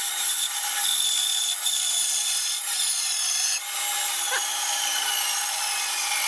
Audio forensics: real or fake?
real